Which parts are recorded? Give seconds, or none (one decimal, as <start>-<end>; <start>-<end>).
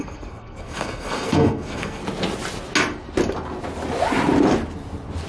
2.0-5.3